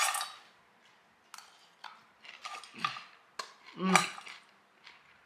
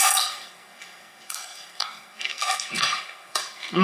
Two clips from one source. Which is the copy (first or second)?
second